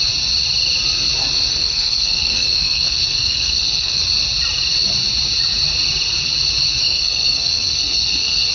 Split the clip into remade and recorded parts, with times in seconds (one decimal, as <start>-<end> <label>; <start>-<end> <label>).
0.0-1.5 recorded; 1.5-4.0 remade; 4.0-6.8 recorded; 6.8-8.5 remade